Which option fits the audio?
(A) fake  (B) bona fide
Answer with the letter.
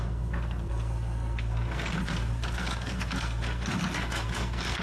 A